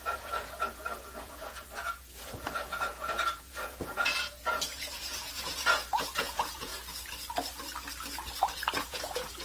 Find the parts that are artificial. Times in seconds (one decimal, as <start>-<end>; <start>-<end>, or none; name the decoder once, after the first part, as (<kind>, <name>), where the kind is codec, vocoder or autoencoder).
0.0-6.7 (vocoder, Vocos); 8.8-9.4

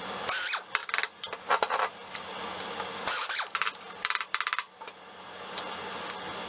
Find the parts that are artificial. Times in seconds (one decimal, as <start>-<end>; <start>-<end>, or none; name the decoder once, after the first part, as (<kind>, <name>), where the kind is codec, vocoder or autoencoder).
none

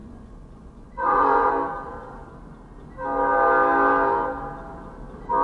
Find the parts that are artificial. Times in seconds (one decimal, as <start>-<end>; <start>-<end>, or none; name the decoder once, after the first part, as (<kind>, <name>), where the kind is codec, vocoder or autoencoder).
0.0-1.5 (vocoder, Vocos)

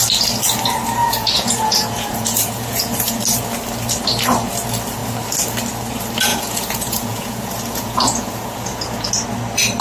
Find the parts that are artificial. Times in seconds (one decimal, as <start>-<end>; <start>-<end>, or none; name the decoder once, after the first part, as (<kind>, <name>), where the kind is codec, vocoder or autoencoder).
1.0-3.2 (vocoder, Vocos); 6.3-9.1

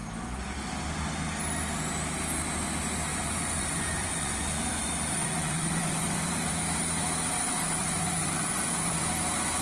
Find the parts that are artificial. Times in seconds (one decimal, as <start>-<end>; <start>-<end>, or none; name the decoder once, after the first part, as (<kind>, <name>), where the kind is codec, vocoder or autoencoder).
3.1-6.5 (vocoder, Vocos); 7.8-9.0

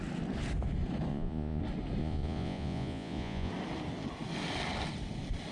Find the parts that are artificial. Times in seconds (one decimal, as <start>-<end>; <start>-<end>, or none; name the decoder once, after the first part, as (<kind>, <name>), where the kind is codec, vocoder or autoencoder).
1.1-1.6 (vocoder, Vocos); 2.0-3.5

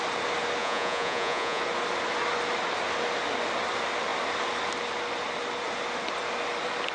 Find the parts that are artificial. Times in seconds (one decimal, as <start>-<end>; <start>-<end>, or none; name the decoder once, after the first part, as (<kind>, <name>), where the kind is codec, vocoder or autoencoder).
0.6-1.6 (vocoder, Vocos)